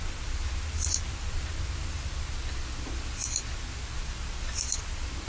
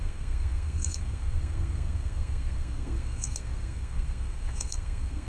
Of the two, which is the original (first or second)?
first